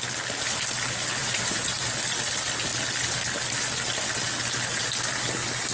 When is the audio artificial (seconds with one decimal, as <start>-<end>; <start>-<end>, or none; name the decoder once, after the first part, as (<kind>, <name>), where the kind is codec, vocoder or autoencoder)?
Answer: 1.2-1.7 (vocoder, Vocos)